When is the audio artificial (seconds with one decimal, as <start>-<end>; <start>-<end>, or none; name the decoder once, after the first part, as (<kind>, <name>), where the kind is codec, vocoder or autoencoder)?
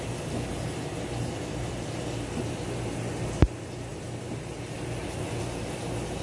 none